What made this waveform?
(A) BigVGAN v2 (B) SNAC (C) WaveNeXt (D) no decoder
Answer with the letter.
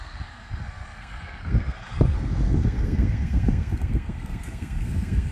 B